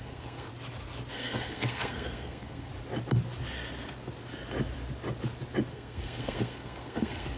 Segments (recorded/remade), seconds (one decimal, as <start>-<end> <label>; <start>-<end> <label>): 0.0-0.5 remade; 0.5-1.1 recorded; 1.1-2.7 remade; 2.7-5.7 recorded; 5.7-7.4 remade